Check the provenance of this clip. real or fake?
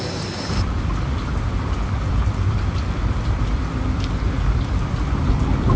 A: real